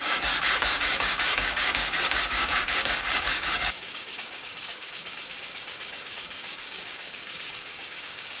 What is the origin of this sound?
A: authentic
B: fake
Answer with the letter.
B